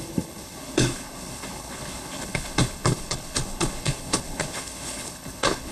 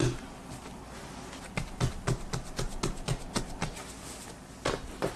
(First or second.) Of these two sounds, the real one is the second